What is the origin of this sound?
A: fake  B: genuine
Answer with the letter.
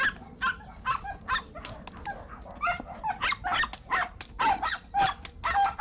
B